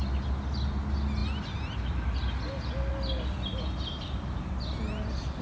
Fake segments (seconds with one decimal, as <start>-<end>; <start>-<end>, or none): none